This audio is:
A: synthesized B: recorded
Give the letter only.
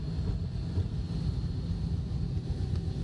B